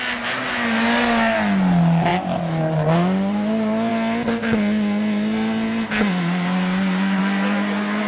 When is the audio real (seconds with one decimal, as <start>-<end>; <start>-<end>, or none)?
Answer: 0.0-8.1